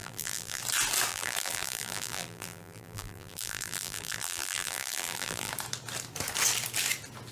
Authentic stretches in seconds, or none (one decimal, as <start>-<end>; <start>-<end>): 0.6-1.1; 5.5-7.3